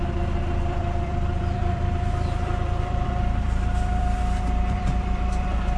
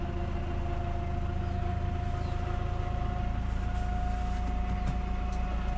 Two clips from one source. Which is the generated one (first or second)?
first